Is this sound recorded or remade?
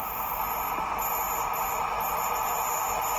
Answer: recorded